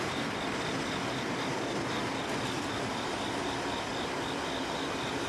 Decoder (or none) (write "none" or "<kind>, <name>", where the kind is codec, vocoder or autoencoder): none